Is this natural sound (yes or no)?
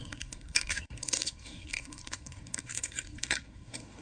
no